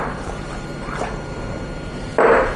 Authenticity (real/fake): real